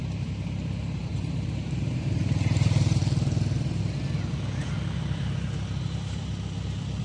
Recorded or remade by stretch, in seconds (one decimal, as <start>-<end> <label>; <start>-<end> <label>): 0.0-3.0 remade; 3.0-7.0 recorded